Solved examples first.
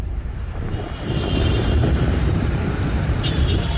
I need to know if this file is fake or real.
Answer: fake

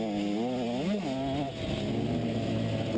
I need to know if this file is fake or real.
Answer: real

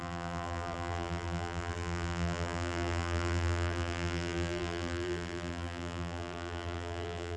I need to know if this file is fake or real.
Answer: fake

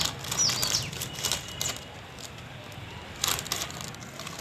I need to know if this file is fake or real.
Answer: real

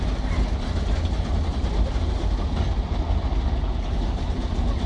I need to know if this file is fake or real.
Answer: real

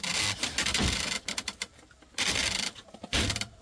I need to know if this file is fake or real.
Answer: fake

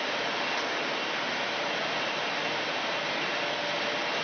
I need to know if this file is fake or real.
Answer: real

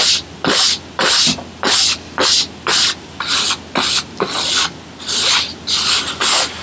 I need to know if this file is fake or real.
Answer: real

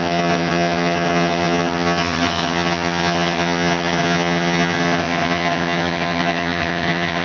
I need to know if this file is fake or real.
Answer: fake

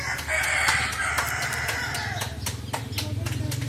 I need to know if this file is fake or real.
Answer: real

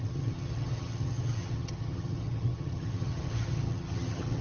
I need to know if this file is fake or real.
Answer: fake